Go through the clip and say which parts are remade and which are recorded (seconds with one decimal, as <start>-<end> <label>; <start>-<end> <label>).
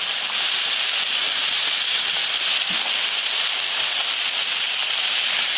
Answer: 0.0-2.2 recorded; 2.2-5.6 remade